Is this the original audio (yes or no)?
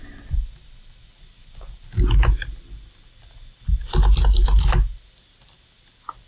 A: yes